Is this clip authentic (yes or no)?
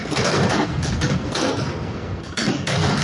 no